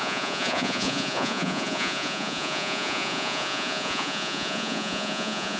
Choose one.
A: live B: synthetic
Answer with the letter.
B